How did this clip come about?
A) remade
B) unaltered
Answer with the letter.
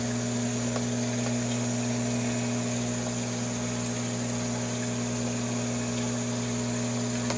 B